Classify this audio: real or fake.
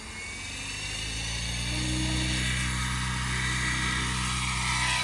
real